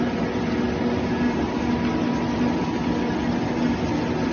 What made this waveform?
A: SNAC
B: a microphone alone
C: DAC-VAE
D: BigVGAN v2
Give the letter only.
B